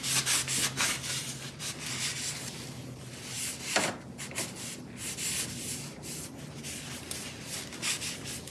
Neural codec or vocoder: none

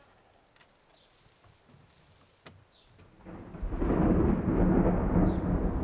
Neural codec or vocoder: none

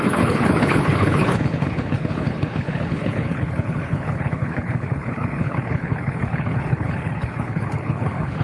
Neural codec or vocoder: codec, HILCodec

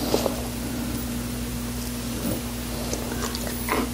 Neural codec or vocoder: vocoder, BigVGAN v2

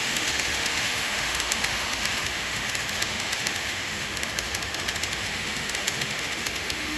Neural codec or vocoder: autoencoder, DAC-VAE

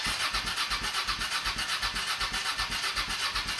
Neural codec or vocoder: none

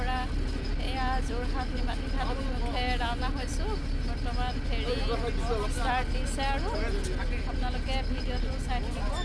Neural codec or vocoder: none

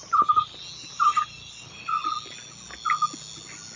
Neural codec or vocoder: none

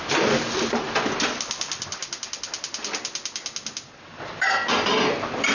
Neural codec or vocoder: none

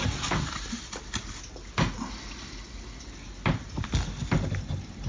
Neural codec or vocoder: none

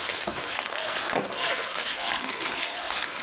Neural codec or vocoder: codec, SNAC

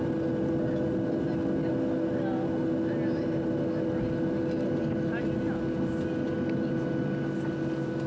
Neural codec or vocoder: none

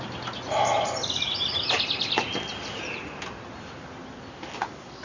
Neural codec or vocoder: none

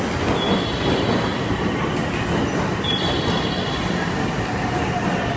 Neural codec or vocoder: none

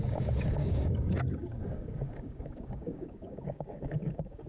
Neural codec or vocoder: codec, DAC